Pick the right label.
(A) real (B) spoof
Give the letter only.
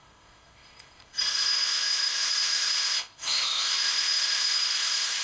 B